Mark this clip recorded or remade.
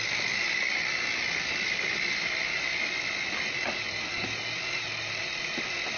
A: recorded